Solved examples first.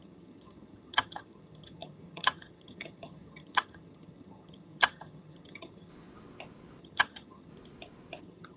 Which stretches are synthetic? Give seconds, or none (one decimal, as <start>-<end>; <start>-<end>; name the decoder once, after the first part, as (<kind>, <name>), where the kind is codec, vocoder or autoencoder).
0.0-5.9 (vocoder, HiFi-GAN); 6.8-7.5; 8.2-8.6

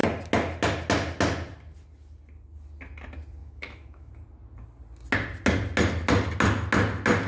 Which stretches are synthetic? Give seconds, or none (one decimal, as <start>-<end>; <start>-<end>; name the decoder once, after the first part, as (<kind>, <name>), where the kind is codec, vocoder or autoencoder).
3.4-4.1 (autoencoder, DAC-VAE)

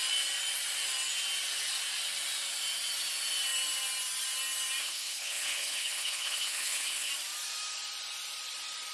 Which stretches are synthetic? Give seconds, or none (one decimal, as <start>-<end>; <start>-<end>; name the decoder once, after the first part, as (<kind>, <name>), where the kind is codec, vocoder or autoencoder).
4.8-7.1 (codec, HILCodec)

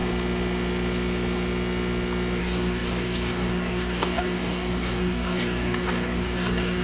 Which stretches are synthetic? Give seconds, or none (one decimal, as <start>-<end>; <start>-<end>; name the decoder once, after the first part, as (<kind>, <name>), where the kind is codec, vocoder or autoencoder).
2.4-6.8 (codec, DAC)

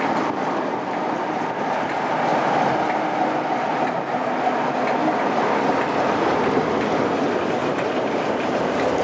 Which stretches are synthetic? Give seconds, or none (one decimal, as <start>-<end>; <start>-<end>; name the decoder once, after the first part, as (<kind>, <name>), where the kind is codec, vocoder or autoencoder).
7.6-9.0 (vocoder, BigVGAN v2)

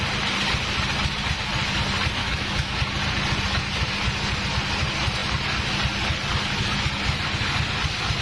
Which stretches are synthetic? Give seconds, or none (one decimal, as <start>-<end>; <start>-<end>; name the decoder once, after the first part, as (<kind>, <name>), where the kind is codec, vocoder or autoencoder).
2.2-2.8 (autoencoder, DAC-VAE)

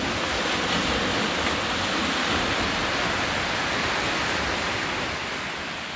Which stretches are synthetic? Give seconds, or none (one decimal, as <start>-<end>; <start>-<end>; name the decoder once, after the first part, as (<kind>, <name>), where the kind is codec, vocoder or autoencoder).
none